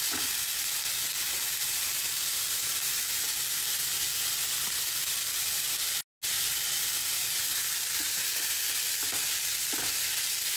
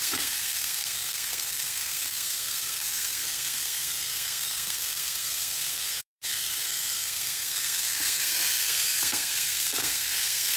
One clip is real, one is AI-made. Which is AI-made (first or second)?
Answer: second